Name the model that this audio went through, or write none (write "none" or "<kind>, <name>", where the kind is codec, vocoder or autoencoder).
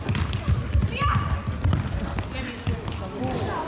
none